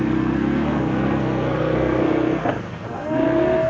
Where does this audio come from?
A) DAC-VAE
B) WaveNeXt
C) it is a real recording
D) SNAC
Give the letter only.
D